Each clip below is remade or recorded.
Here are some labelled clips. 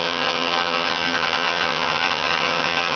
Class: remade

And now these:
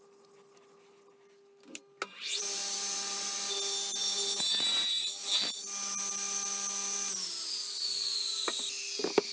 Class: recorded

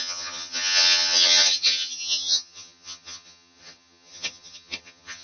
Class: remade